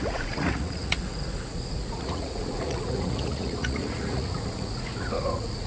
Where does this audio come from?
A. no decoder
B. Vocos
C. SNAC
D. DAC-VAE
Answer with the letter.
B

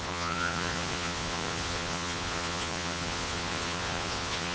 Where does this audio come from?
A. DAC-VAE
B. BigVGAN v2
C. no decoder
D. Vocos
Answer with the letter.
D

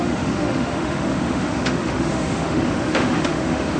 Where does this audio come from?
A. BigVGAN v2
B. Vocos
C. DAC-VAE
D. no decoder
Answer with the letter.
C